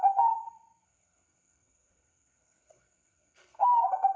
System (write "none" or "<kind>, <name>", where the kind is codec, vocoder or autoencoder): codec, SNAC